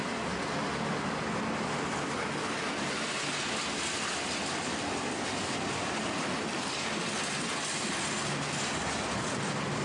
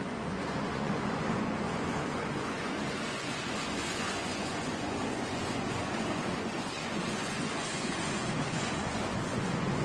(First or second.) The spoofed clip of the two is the second